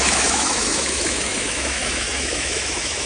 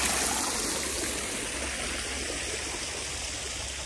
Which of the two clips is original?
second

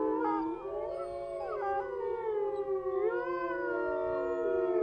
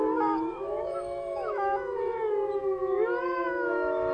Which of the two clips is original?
first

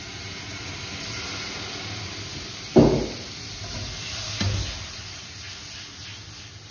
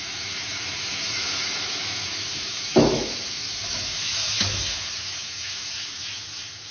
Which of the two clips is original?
first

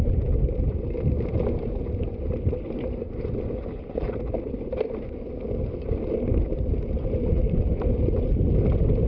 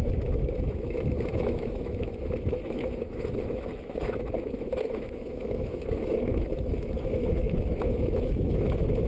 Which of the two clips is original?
first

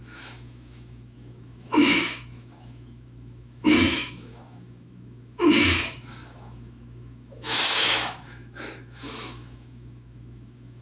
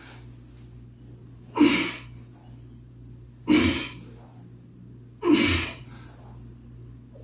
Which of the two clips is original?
second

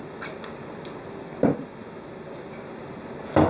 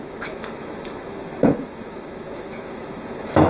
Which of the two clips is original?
first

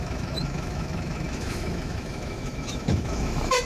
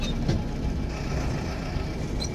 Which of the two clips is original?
second